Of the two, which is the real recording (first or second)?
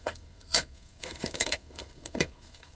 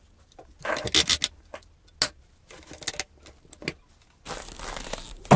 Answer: second